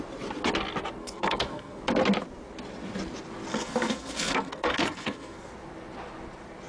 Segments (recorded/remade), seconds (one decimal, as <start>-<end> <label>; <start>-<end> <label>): 0.0-1.0 recorded; 1.0-1.8 remade; 1.8-3.5 recorded; 3.5-5.5 remade; 5.5-6.7 recorded